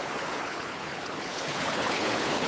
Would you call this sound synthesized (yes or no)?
yes